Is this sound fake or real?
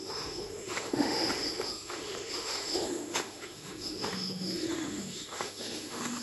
fake